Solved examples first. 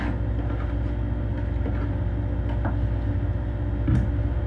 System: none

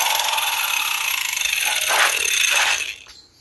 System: none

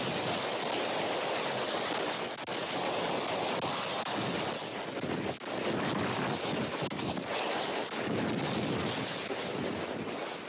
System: none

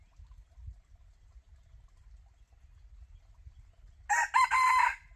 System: none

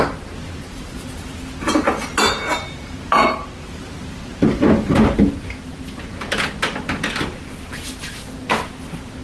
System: none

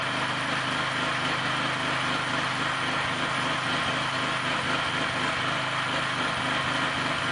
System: none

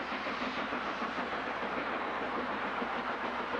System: vocoder, BigVGAN v2